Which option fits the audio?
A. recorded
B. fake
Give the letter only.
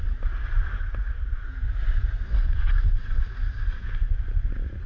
A